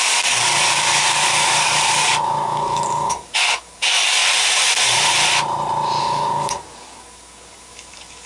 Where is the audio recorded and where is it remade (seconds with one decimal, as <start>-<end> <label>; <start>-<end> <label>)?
0.0-4.2 remade; 4.2-6.0 recorded; 6.0-8.3 remade